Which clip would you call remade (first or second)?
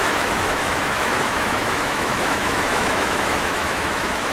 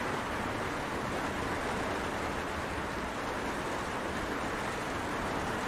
first